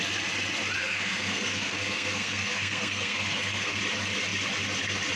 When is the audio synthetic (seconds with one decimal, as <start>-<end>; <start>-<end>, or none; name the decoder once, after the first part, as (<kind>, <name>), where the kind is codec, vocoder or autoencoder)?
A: 0.8-3.8 (codec, SNAC)